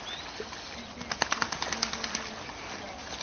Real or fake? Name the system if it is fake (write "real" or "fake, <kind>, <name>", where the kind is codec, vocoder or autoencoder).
real